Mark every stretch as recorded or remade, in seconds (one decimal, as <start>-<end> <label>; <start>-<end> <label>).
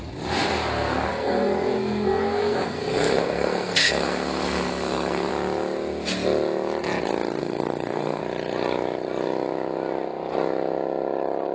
0.0-1.1 recorded; 1.1-5.3 remade; 5.3-7.4 recorded; 7.4-8.2 remade; 8.2-11.5 recorded